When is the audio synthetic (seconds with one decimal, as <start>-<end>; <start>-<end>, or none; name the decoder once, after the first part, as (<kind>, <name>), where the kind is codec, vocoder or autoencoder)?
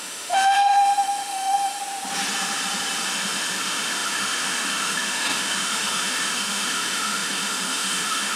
0.0-1.8 (autoencoder, DAC-VAE); 3.1-8.4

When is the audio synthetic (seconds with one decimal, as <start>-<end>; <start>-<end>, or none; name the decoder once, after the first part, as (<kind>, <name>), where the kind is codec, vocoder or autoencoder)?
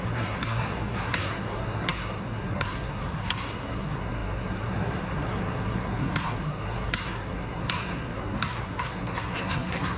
0.0-10.0 (codec, SNAC)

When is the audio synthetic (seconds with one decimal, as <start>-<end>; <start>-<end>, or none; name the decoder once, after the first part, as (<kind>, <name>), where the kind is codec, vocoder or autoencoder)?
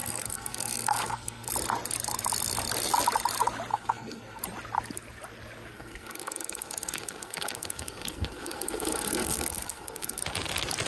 0.0-1.5 (codec, SNAC); 3.7-4.4; 5.7-10.2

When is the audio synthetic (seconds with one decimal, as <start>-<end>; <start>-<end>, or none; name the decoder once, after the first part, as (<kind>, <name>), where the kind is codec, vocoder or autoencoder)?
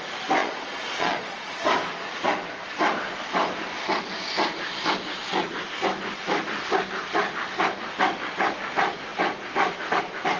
0.4-1.6 (vocoder, Vocos)